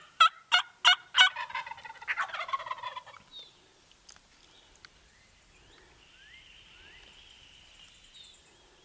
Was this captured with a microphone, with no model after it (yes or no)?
yes